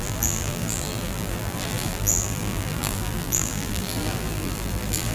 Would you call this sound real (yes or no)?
no